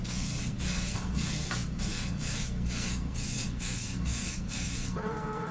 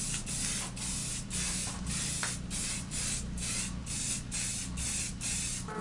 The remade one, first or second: first